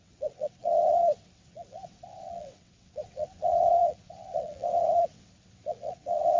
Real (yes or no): no